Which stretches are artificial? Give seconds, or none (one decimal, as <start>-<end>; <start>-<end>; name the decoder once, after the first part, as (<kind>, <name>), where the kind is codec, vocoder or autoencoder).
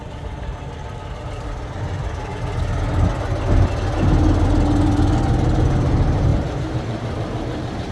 6.3-7.9 (vocoder, BigVGAN v2)